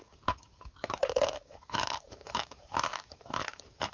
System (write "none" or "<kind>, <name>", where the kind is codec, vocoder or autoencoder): autoencoder, DAC-VAE